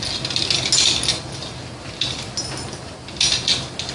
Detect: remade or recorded recorded